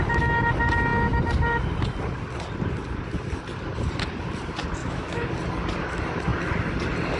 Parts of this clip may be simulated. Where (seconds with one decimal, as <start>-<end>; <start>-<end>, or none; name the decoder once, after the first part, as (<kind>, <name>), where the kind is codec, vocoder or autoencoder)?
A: 4.8-5.3 (autoencoder, DAC-VAE)